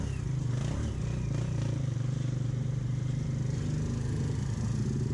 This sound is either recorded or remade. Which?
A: recorded